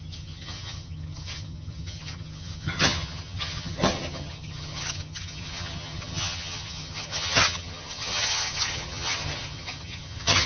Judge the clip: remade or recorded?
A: remade